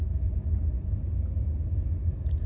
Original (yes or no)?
yes